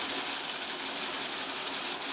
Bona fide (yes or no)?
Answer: yes